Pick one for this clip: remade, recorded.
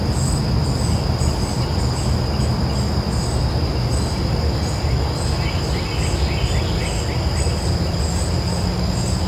recorded